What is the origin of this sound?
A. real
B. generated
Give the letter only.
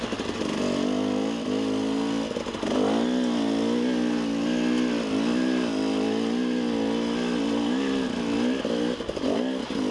A